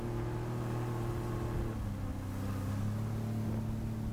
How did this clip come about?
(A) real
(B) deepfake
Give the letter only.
A